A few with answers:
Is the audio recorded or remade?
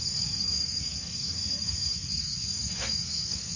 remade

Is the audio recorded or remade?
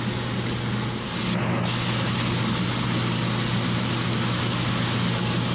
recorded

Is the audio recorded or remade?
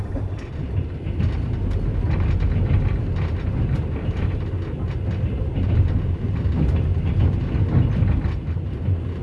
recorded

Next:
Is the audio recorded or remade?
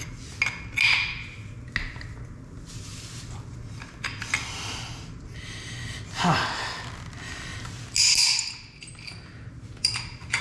recorded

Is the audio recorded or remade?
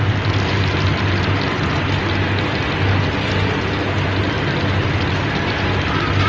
recorded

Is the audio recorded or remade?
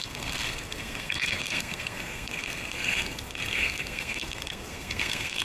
remade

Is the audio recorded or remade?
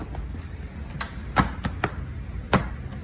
recorded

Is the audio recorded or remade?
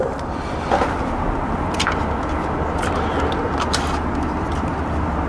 recorded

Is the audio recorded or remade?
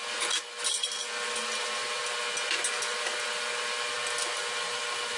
recorded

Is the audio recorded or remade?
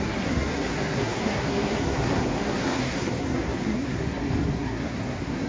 remade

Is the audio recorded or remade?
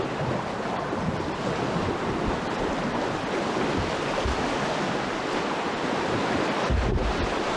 recorded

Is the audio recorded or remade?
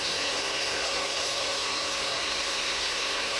remade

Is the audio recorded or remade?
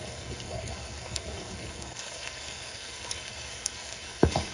remade